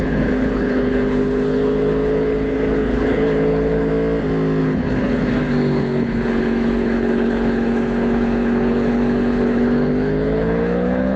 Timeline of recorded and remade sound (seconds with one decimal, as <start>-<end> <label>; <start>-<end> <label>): 0.0-3.9 remade; 3.9-4.6 recorded; 4.6-11.2 remade

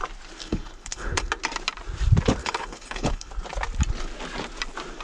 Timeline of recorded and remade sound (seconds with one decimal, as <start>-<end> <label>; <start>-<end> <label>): 0.0-0.4 recorded; 0.4-1.3 remade; 1.3-2.4 recorded; 2.4-3.3 remade; 3.3-5.0 recorded

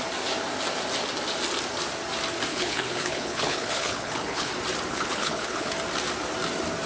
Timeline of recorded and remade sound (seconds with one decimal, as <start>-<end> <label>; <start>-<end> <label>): 0.0-2.5 recorded; 2.5-4.5 remade; 4.5-4.9 recorded; 4.9-5.7 remade; 5.7-6.9 recorded

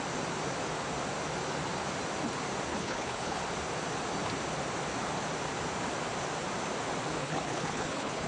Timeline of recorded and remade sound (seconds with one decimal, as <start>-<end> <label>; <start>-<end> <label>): 0.0-2.7 recorded; 2.7-3.4 remade; 3.4-7.2 recorded; 7.2-8.3 remade

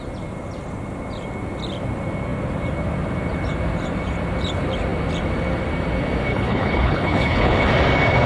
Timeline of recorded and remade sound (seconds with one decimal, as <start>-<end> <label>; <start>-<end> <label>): 0.0-6.3 recorded; 6.3-7.7 remade; 7.7-8.3 recorded

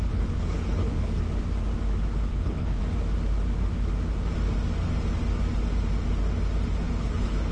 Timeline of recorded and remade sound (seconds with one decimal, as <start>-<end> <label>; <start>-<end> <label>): 0.0-1.2 remade; 1.2-2.3 recorded; 2.3-2.8 remade; 2.8-7.0 recorded; 7.0-7.5 remade